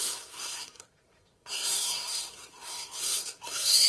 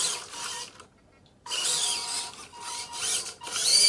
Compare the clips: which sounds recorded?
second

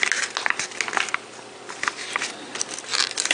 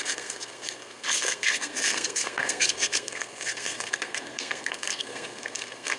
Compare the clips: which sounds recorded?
first